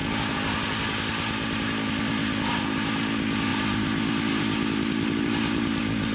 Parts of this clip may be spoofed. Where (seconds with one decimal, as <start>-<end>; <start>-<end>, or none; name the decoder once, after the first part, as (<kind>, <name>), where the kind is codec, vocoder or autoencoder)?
none